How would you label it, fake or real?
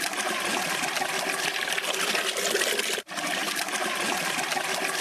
real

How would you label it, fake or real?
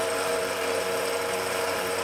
fake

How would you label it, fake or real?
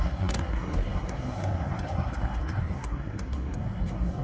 fake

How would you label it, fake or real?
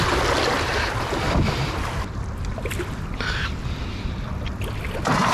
real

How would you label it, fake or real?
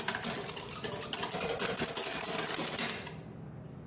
real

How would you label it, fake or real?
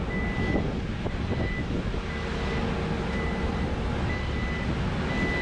real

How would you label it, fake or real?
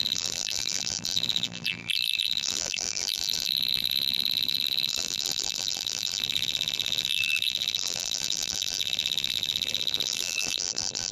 fake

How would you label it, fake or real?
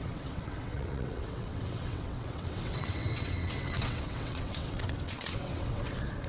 fake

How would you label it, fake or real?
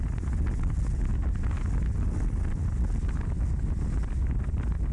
real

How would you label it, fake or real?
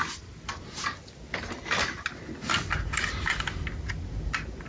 real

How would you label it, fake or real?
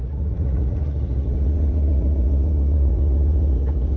fake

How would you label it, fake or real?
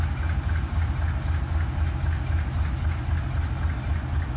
real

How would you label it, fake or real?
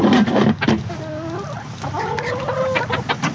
real